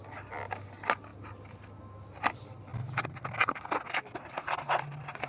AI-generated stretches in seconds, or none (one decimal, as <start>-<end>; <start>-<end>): none